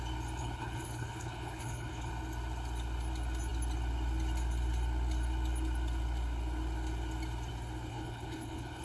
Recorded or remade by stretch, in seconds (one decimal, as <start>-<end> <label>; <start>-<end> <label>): 0.0-0.4 recorded; 0.4-2.1 remade; 2.1-7.9 recorded; 7.9-8.8 remade

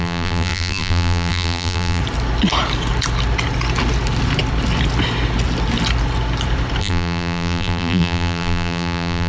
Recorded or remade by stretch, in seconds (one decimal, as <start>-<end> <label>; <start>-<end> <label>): 0.0-2.0 remade; 2.0-6.8 recorded; 6.8-9.3 remade

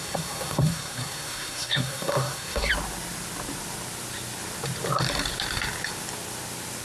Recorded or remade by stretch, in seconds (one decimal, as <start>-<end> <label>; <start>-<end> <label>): 0.0-2.7 remade; 2.7-6.8 recorded

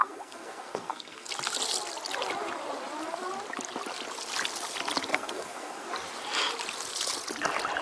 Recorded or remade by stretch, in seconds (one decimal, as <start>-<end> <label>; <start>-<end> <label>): 0.0-1.3 remade; 1.3-5.1 recorded; 5.1-5.9 remade; 5.9-7.8 recorded

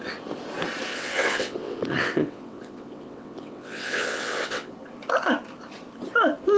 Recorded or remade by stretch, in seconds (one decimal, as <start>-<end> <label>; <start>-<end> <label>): 0.0-0.9 recorded; 0.9-4.7 remade; 4.7-6.6 recorded